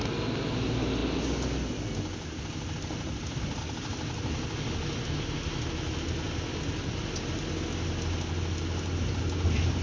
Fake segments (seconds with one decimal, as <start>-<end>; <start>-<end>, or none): none